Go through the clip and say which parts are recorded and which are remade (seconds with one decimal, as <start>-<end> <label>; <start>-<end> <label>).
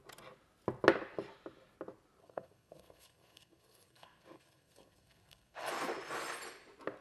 0.0-2.2 recorded; 2.2-5.7 remade; 5.7-7.0 recorded